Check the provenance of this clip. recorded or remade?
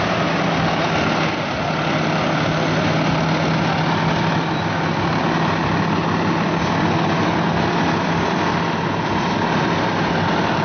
recorded